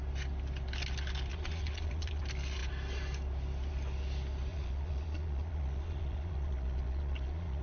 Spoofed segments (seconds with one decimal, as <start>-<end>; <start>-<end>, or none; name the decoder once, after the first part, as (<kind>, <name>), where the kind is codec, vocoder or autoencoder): 1.3-2.2 (vocoder, Vocos); 4.5-7.6